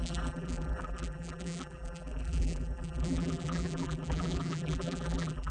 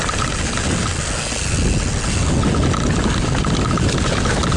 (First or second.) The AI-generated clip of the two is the first